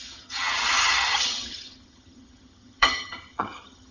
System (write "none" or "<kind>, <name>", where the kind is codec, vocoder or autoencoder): vocoder, HiFi-GAN